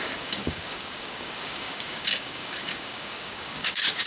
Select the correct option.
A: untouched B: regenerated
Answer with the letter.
B